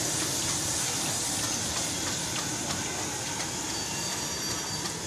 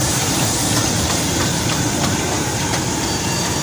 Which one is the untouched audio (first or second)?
first